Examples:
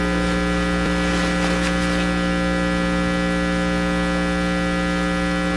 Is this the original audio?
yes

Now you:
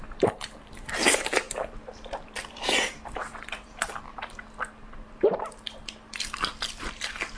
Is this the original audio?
no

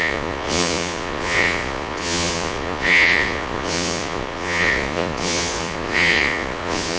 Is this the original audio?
no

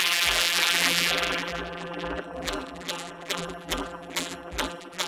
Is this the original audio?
no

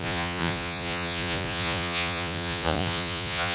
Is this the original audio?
no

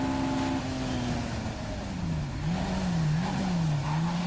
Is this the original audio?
yes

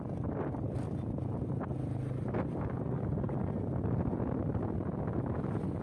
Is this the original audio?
yes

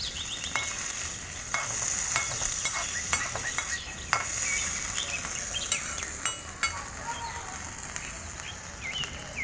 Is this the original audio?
yes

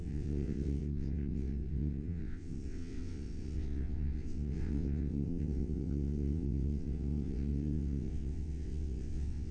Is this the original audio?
no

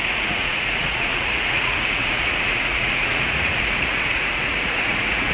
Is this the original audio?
no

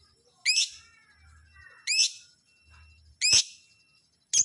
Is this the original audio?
yes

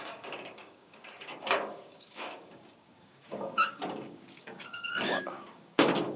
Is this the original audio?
no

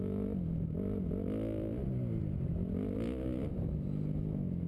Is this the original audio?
yes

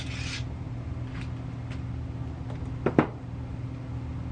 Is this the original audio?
yes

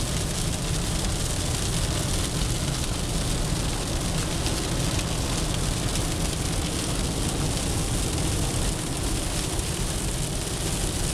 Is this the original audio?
yes